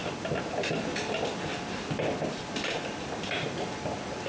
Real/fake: real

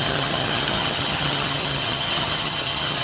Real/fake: fake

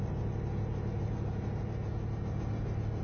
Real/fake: real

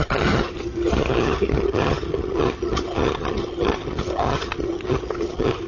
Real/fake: fake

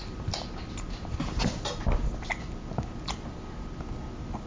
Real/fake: real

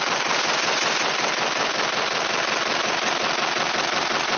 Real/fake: real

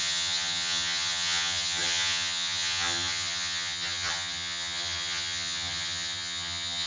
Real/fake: fake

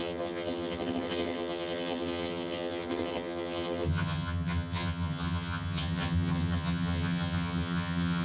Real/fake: fake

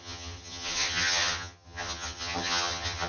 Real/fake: fake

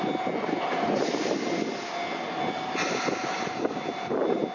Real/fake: real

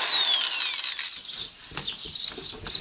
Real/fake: real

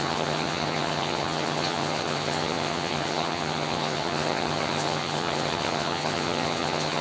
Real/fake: fake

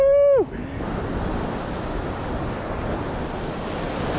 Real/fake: real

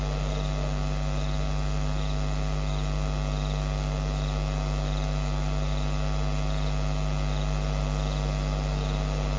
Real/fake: real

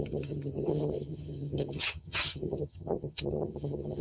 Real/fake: fake